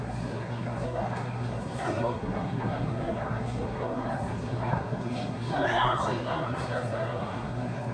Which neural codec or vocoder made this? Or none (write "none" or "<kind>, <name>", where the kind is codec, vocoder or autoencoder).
codec, SNAC